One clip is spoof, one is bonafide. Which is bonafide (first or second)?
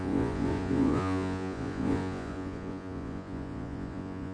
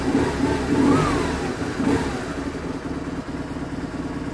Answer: second